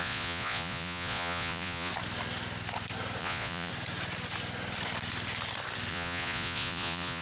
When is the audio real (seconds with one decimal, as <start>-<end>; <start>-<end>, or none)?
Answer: 1.9-3.2; 3.7-5.9